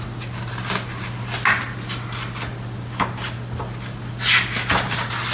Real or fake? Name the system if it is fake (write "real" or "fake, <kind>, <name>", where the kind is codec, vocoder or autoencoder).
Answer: real